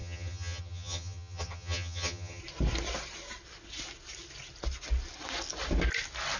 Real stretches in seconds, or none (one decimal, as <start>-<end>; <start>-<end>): 2.4-6.4